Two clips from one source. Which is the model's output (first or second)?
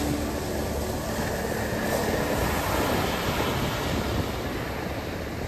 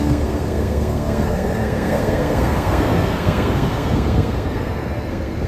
second